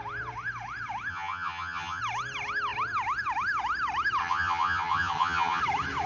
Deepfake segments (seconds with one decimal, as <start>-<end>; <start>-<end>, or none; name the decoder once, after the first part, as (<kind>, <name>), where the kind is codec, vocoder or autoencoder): 1.1-2.0 (vocoder, HiFi-GAN); 4.2-5.6